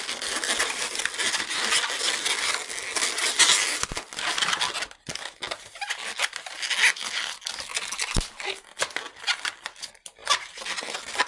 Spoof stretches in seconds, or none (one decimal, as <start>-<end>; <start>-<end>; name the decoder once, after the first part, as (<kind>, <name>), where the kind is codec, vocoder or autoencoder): none